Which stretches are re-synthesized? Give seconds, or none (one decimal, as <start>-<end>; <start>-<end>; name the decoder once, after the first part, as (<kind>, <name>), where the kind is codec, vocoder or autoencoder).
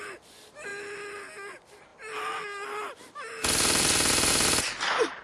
none